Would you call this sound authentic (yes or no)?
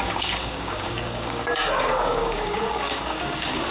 no